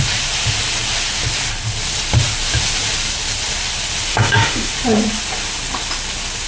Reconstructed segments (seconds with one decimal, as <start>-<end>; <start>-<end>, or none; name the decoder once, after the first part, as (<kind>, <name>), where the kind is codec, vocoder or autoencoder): 4.1-4.7 (autoencoder, DAC-VAE)